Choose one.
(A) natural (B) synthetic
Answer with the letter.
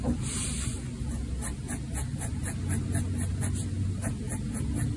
A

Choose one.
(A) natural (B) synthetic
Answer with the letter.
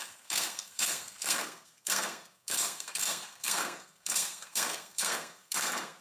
B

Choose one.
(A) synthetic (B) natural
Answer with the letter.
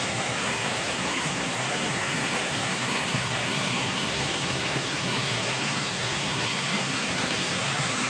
A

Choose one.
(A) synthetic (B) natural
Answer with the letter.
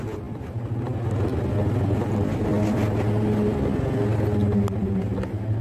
B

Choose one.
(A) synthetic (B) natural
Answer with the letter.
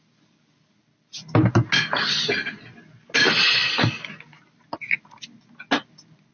B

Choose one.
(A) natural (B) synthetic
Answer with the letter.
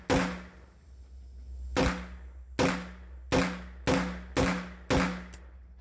A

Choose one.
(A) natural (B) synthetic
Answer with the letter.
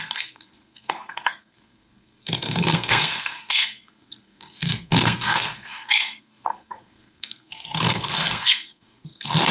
B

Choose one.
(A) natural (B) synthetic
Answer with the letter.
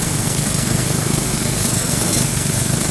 B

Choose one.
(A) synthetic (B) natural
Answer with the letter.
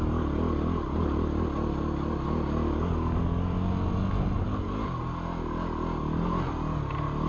B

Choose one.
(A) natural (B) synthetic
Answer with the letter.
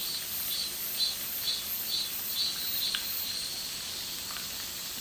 A